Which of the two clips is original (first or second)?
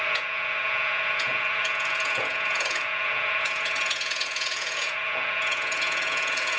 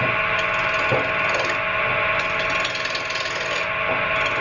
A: second